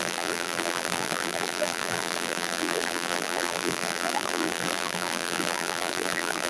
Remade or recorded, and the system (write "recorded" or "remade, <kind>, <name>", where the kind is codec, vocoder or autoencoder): remade, vocoder, BigVGAN v2